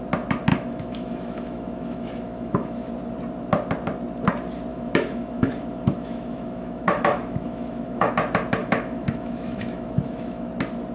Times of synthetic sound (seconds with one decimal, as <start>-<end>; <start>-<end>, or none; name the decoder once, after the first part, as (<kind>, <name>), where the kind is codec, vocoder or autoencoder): 0.5-2.9 (autoencoder, DAC-VAE); 4.7-8.1; 8.6-10.5